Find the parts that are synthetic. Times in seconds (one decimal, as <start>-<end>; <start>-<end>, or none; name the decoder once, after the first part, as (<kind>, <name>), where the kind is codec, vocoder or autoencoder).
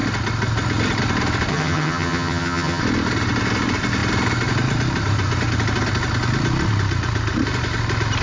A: 1.5-2.8 (vocoder, HiFi-GAN)